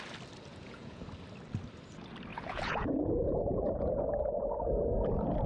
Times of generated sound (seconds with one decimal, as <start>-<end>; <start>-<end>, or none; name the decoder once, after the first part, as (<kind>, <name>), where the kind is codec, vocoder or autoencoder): 0.5-1.0 (vocoder, Vocos); 2.3-4.0